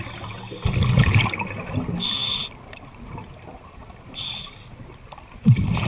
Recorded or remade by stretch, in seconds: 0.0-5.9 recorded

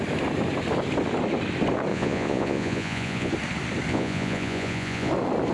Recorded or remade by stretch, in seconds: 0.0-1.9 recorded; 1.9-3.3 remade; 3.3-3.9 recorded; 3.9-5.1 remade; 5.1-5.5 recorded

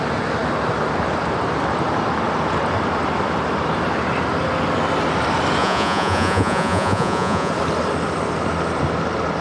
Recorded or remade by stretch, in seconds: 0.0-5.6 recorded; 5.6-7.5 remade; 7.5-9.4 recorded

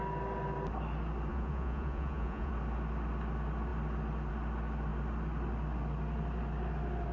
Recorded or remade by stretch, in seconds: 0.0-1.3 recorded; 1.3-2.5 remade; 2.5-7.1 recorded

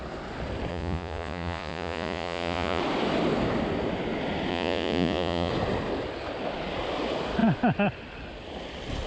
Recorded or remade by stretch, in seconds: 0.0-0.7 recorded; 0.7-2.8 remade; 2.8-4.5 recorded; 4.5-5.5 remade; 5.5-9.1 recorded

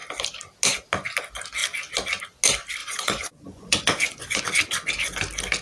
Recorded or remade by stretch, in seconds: 0.0-2.8 recorded; 2.8-4.4 remade; 4.4-5.6 recorded

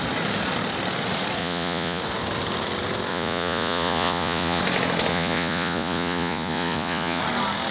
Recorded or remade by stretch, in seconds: 0.0-1.4 recorded; 1.4-2.0 remade; 2.0-3.1 recorded; 3.1-4.6 remade; 4.6-5.1 recorded; 5.1-7.2 remade; 7.2-7.7 recorded